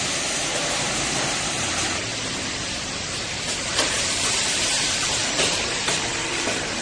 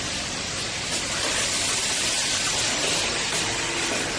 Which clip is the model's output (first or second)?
first